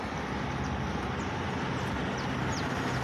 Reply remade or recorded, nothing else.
recorded